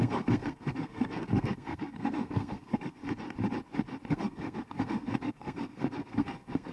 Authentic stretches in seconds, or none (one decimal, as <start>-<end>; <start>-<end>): 3.0-4.1